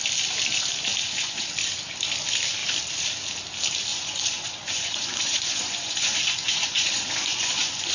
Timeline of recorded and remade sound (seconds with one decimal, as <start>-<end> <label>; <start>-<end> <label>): 0.0-1.0 recorded; 1.0-1.5 remade; 1.5-3.9 recorded; 3.9-7.9 remade